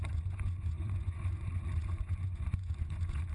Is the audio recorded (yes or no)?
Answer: no